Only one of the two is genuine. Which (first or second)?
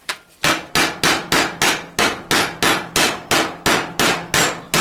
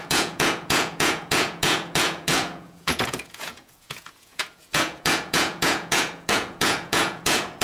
first